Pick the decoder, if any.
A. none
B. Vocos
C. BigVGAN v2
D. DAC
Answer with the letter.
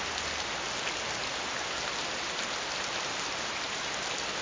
A